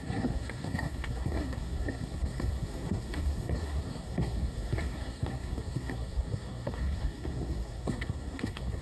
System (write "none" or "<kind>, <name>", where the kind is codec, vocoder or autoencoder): codec, SNAC